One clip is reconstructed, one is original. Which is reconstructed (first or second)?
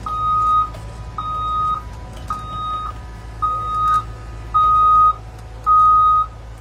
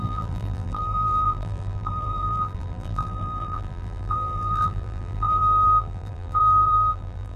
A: second